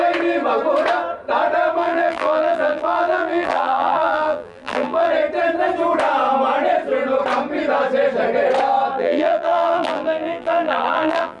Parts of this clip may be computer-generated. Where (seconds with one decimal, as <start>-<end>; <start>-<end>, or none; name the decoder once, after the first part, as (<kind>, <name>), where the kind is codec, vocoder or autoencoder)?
1.8-5.1 (vocoder, BigVGAN v2); 8.9-11.4